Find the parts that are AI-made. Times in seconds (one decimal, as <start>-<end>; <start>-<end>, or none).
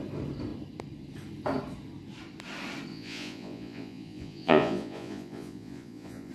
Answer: 2.9-6.3